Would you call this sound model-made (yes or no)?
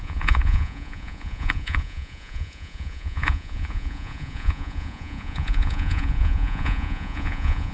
yes